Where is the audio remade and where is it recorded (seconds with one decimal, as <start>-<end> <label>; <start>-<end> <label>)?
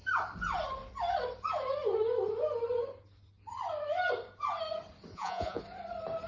0.0-5.1 recorded; 5.1-5.6 remade; 5.6-6.3 recorded